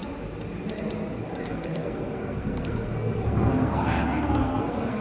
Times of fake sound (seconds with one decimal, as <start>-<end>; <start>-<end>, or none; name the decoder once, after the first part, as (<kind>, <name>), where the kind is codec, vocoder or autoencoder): 1.4-5.0 (codec, SNAC)